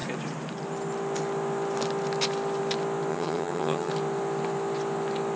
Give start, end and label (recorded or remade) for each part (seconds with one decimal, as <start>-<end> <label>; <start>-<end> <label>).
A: 0.0-3.1 recorded; 3.1-3.9 remade; 3.9-5.4 recorded

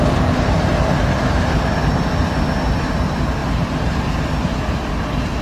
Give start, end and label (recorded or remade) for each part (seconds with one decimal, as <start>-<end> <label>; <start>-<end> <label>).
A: 0.0-5.4 recorded

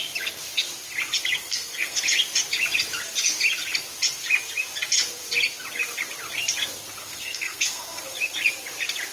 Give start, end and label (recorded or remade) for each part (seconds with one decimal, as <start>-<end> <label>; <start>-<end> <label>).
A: 0.0-1.4 recorded; 1.4-2.0 remade; 2.0-7.0 recorded; 7.0-8.0 remade; 8.0-9.1 recorded

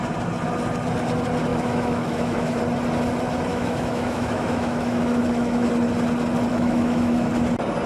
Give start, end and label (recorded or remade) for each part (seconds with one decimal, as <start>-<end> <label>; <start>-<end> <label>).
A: 0.0-1.5 recorded; 1.5-2.6 remade; 2.6-3.5 recorded; 3.5-5.7 remade; 5.7-6.5 recorded; 6.5-7.3 remade; 7.3-7.9 recorded

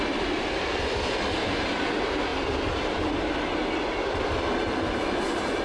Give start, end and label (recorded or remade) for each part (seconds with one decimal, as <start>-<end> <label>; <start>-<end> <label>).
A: 0.0-5.6 recorded

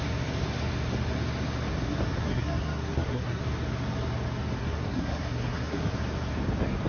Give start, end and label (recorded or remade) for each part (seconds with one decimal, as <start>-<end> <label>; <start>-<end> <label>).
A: 0.0-2.2 recorded; 2.2-3.4 remade; 3.4-4.6 recorded; 4.6-5.9 remade; 5.9-6.9 recorded

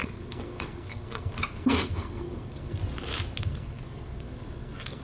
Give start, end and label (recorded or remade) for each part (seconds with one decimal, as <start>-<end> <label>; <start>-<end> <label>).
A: 0.0-2.8 remade; 2.8-3.4 recorded; 3.4-5.0 remade